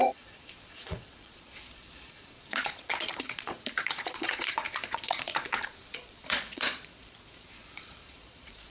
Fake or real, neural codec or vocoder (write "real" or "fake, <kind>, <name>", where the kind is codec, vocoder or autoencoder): fake, vocoder, Vocos